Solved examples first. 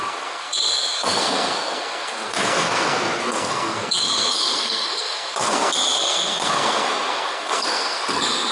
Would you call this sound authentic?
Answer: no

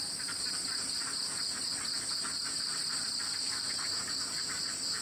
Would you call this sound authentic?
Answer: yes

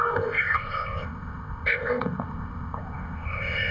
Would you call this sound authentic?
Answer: no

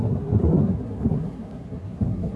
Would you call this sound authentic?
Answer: no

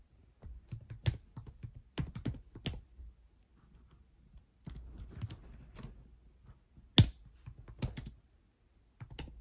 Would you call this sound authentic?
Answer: yes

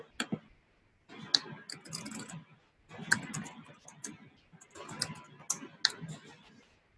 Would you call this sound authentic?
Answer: yes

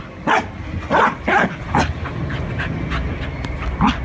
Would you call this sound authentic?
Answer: yes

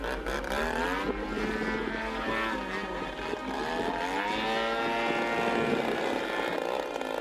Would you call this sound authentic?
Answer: yes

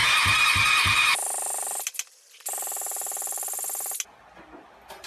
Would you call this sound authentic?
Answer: yes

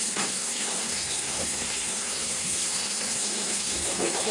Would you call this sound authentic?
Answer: no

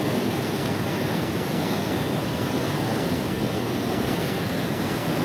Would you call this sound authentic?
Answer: no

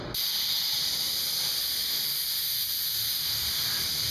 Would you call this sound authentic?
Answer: yes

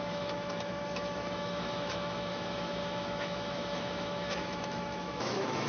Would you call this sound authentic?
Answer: no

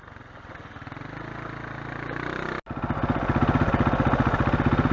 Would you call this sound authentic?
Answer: yes